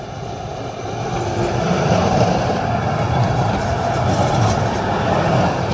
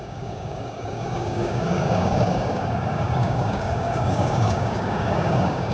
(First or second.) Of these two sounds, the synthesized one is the second